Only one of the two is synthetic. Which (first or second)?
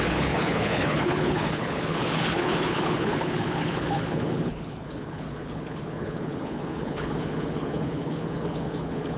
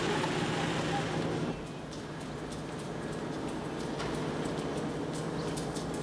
first